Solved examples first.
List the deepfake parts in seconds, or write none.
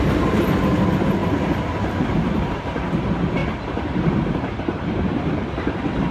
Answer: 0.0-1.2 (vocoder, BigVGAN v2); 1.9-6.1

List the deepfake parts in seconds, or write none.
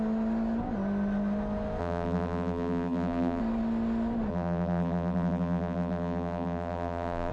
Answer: 1.8-3.4 (vocoder, BigVGAN v2); 4.3-7.3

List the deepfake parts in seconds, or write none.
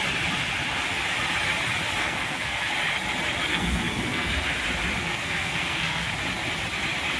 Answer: 2.0-2.7 (codec, SNAC); 3.5-4.3; 5.0-6.1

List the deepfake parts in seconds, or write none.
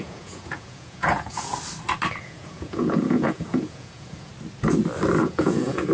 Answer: 0.0-1.5 (vocoder, Vocos); 2.2-4.3; 5.2-5.9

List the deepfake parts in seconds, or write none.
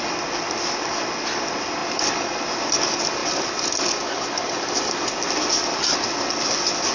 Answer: none